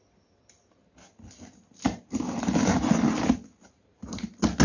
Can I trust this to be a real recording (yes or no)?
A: yes